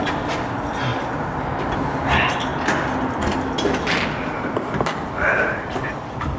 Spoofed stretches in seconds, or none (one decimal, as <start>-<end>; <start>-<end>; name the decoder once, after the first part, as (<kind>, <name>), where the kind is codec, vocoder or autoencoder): none